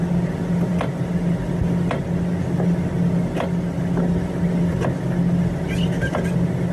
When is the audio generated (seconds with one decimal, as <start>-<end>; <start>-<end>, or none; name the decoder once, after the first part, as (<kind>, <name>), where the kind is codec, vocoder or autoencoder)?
none